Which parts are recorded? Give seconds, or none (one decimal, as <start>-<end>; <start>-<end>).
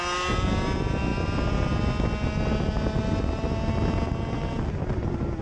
0.0-5.4